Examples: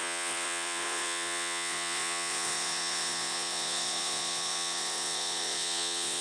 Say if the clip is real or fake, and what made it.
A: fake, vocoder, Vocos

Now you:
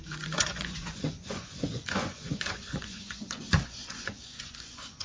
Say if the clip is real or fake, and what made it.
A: fake, vocoder, Vocos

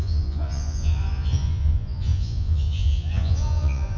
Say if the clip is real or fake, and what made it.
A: fake, vocoder, Vocos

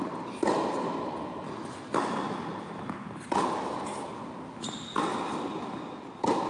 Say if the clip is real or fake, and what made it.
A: real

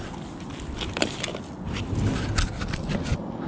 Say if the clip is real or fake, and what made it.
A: real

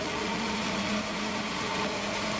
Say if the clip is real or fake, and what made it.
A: fake, vocoder, Vocos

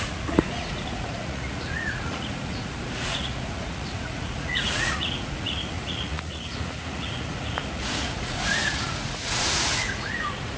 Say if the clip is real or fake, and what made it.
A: fake, vocoder, Vocos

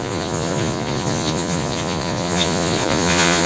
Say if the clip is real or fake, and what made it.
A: fake, vocoder, Vocos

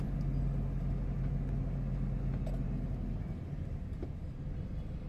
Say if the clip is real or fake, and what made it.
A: real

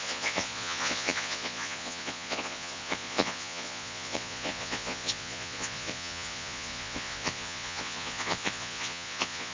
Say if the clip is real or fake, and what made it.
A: fake, vocoder, Vocos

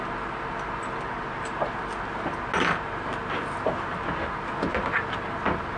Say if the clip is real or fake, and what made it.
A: real